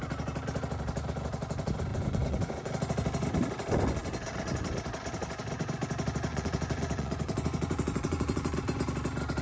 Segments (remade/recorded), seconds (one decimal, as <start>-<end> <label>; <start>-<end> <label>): 0.0-1.9 recorded; 1.9-2.7 remade; 2.7-6.3 recorded; 6.3-8.6 remade; 8.6-9.4 recorded